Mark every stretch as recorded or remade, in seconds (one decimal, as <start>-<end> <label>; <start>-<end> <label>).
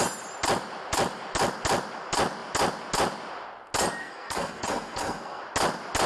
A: 0.0-4.0 recorded; 4.0-5.4 remade; 5.4-6.1 recorded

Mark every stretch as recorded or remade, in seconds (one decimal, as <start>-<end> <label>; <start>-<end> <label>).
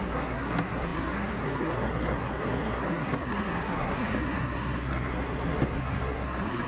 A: 0.0-6.7 remade